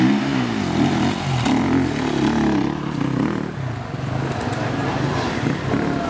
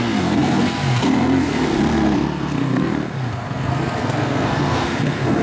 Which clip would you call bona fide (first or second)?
first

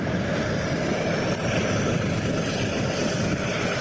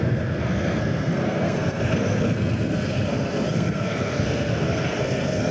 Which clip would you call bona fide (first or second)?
first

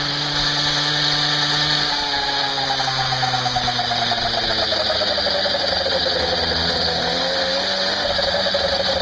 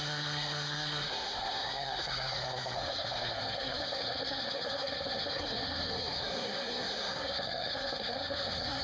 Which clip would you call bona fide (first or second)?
first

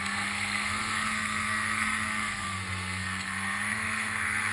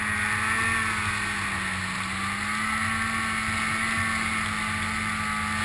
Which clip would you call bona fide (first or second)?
second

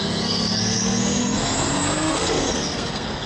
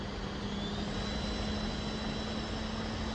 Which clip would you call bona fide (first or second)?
second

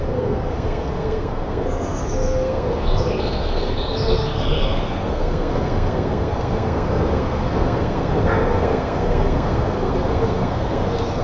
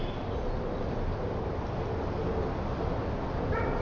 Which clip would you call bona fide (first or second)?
second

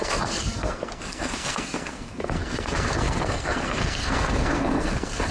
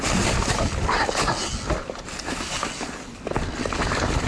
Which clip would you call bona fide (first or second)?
second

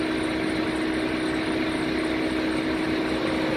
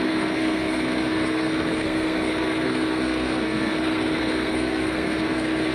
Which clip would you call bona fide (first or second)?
first